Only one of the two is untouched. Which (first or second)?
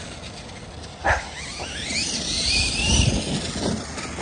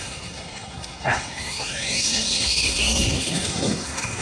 first